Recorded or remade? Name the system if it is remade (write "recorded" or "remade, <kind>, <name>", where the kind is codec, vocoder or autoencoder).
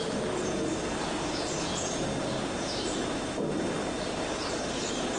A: recorded